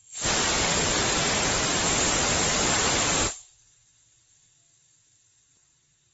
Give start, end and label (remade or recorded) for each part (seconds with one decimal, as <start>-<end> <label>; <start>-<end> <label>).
0.0-1.2 remade; 1.2-1.7 recorded; 1.7-2.5 remade; 2.5-6.1 recorded